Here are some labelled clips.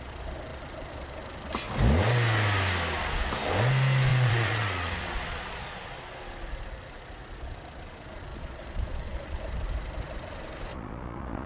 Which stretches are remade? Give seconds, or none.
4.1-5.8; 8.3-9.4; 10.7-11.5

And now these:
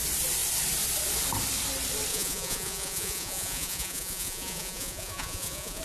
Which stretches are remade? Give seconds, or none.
2.1-5.8

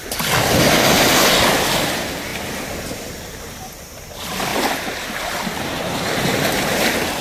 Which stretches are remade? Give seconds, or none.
none

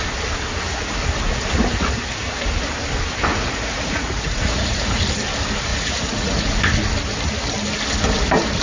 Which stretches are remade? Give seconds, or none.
3.3-5.0; 5.7-6.6